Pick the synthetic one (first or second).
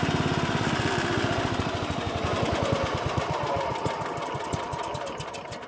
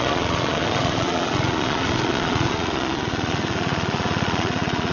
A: second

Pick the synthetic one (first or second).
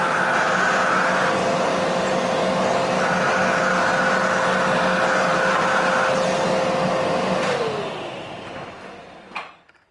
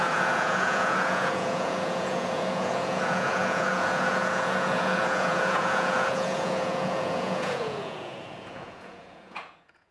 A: second